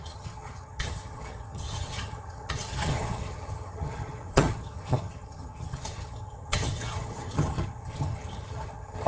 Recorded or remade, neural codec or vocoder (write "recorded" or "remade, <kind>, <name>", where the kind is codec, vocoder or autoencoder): remade, vocoder, HiFi-GAN